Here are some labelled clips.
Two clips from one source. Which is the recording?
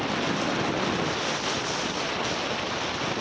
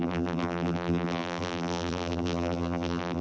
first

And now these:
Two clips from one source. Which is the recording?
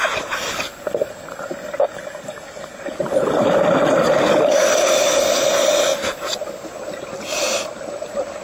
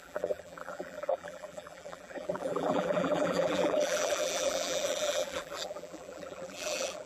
first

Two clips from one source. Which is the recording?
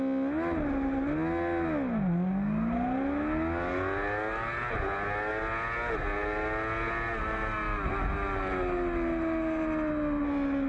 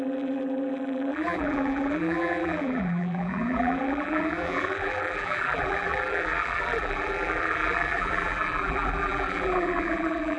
first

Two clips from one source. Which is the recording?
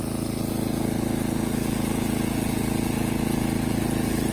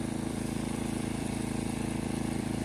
first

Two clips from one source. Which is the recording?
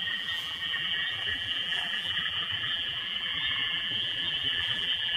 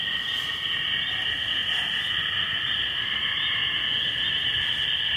second